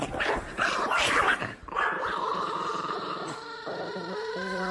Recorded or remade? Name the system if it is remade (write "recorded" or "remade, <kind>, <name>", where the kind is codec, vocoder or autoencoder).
remade, vocoder, BigVGAN v2